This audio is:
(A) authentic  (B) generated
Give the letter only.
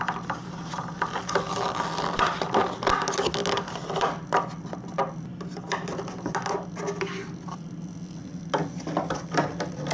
A